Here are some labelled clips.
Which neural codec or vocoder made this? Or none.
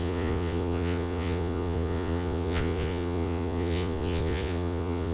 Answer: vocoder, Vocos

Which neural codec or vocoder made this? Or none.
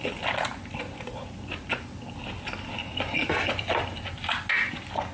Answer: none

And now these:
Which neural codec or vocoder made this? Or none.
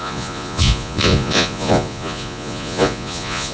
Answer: vocoder, Vocos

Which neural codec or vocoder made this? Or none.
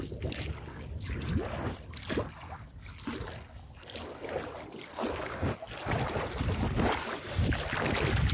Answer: none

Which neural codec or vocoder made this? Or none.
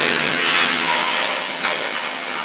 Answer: vocoder, HiFi-GAN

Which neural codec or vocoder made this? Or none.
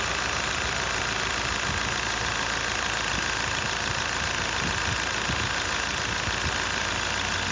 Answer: none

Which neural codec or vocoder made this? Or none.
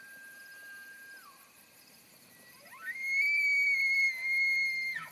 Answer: vocoder, BigVGAN v2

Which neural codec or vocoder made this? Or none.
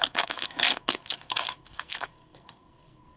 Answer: codec, SNAC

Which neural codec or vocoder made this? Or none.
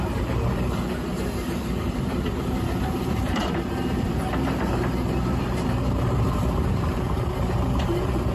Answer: vocoder, BigVGAN v2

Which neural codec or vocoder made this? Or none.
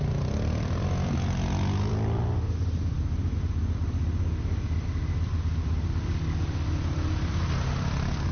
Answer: vocoder, BigVGAN v2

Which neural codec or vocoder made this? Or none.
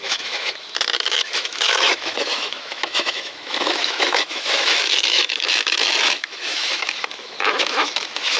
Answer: autoencoder, DAC-VAE